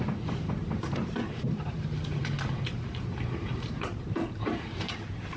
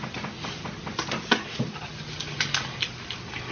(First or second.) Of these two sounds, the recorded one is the second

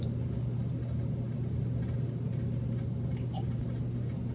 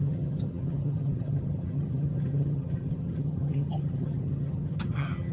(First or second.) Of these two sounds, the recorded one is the first